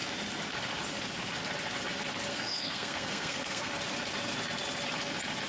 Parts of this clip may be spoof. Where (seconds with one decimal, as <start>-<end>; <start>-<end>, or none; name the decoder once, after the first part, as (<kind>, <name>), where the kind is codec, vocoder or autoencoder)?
2.3-3.7 (codec, SNAC)